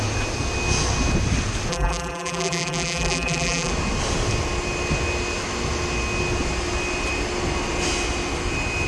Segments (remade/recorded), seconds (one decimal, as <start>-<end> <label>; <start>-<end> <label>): 0.0-1.7 recorded; 1.7-3.7 remade; 3.7-8.9 recorded

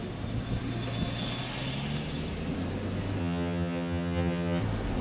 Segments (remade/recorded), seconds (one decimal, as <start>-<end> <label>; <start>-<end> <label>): 0.0-3.2 recorded; 3.2-4.6 remade; 4.6-5.0 recorded

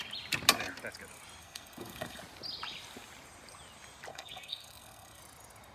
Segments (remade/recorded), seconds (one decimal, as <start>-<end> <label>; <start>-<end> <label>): 0.0-1.4 recorded; 1.4-2.2 remade; 2.2-4.1 recorded; 4.1-5.2 remade; 5.2-5.7 recorded

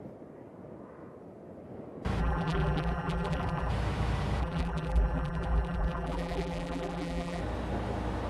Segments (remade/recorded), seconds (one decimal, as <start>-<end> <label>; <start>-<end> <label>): 0.0-2.2 recorded; 2.2-3.7 remade; 3.7-4.4 recorded; 4.4-7.4 remade; 7.4-8.3 recorded

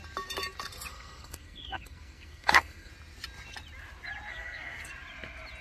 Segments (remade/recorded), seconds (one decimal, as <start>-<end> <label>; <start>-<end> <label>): 0.0-0.9 recorded; 0.9-2.9 remade; 2.9-4.3 recorded; 4.3-4.9 remade; 4.9-5.6 recorded

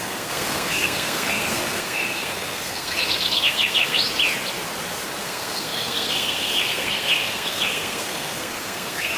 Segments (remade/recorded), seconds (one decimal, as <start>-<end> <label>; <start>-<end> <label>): 0.0-4.0 remade; 4.0-5.2 recorded; 5.2-9.2 remade